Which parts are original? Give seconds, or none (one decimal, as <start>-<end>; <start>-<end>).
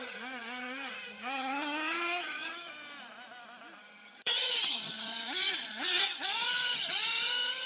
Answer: 2.7-3.8